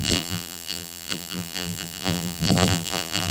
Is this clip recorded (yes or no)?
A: no